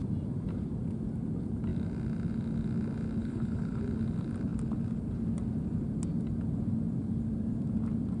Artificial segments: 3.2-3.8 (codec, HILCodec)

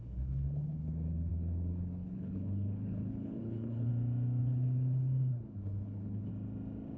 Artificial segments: 0.0-3.9 (codec, HILCodec); 4.4-6.3